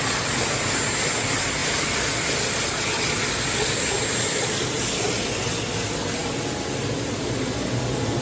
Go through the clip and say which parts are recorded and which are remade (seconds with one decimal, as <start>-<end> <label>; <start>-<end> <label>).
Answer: 0.0-8.2 recorded